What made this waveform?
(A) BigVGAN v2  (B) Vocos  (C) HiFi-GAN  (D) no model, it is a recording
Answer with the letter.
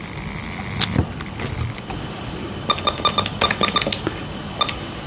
D